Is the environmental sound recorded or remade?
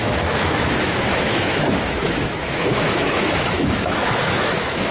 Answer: remade